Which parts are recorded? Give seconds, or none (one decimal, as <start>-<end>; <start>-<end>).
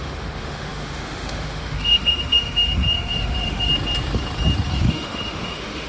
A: 3.7-4.7